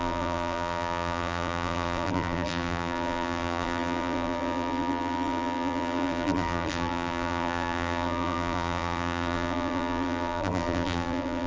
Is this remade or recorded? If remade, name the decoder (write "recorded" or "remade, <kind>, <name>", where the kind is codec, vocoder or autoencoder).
remade, vocoder, BigVGAN v2